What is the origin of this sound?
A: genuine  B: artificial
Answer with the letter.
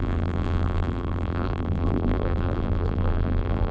B